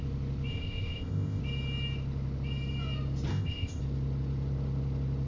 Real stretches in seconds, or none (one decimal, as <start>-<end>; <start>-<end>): 0.0-0.5; 1.4-3.3; 3.8-5.3